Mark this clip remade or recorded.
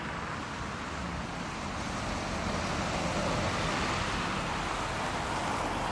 recorded